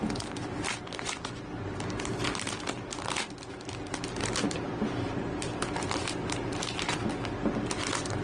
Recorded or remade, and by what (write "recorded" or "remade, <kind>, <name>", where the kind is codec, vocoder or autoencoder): recorded